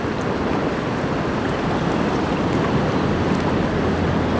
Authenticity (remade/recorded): recorded